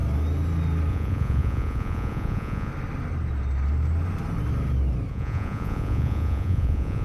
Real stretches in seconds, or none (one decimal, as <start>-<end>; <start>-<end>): 0.0-0.9; 2.7-5.1